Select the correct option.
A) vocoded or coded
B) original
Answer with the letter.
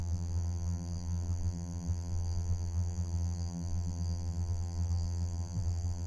A